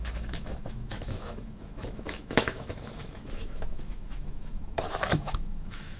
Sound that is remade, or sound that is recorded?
remade